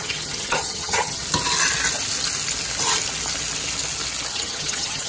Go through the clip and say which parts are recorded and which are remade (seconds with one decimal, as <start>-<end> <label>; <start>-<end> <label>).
0.0-1.2 remade; 1.2-4.3 recorded; 4.3-5.1 remade